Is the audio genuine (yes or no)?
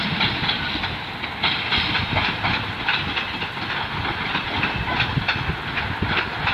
yes